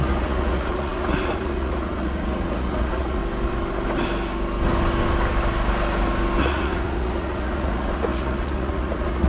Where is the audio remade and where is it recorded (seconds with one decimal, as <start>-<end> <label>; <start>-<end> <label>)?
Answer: 0.0-3.2 remade; 3.2-6.4 recorded; 6.4-9.3 remade